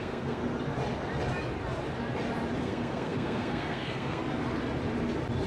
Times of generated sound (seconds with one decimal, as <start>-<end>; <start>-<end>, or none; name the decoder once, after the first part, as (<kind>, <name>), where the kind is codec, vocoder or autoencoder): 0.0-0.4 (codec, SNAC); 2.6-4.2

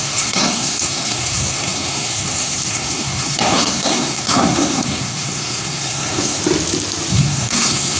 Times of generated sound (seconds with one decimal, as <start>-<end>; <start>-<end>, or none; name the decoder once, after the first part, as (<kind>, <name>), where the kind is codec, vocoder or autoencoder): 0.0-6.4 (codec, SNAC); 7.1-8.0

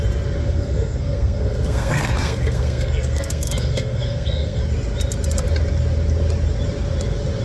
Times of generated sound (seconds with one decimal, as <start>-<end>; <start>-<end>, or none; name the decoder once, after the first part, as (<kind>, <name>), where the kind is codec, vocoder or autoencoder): 0.4-4.6 (codec, SNAC)

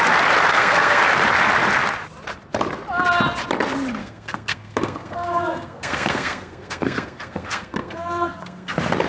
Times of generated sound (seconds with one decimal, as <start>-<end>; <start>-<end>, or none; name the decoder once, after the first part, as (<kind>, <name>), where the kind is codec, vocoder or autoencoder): 0.5-1.0 (codec, SNAC); 4.0-8.7